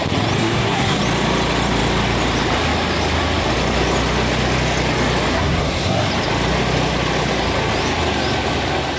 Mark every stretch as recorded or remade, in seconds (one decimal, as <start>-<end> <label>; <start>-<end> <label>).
0.0-0.4 recorded; 0.4-1.0 remade; 1.0-5.3 recorded; 5.3-6.1 remade; 6.1-9.0 recorded